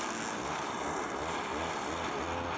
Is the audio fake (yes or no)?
no